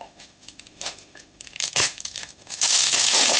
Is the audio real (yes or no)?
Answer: no